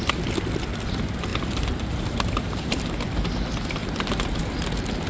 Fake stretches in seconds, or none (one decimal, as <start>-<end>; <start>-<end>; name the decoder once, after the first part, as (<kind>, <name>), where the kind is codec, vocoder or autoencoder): 1.3-3.1 (vocoder, BigVGAN v2); 3.8-4.4